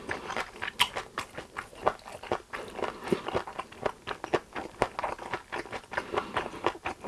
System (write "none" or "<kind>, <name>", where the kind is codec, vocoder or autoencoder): none